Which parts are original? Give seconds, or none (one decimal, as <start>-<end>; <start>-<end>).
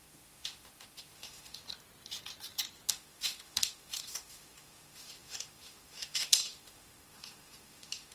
1.6-2.9